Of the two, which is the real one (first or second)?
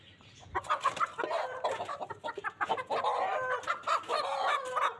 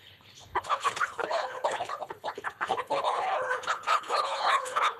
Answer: first